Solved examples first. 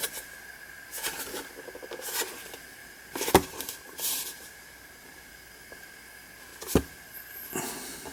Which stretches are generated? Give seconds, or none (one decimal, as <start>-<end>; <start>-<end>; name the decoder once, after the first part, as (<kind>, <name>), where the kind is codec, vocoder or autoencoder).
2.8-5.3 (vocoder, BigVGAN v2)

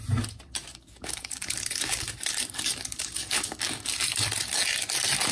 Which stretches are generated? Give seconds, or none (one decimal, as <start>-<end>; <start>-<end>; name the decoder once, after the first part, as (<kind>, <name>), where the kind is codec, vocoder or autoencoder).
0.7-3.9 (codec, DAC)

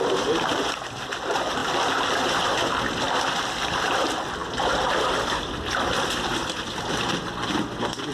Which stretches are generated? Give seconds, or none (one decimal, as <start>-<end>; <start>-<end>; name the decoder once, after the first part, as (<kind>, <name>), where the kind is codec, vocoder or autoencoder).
none

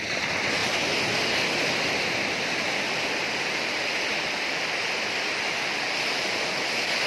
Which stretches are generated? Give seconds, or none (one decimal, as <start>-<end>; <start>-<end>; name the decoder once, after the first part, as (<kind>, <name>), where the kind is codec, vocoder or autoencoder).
none

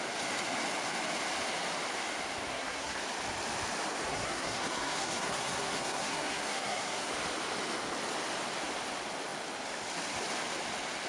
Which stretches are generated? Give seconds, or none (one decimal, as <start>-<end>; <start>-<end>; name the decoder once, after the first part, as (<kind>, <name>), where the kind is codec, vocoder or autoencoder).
2.5-3.0 (codec, SNAC); 4.1-7.1

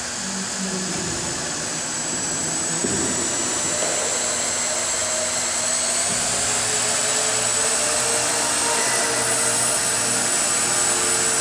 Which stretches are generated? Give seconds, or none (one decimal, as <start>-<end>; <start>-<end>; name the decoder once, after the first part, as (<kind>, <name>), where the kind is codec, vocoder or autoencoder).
none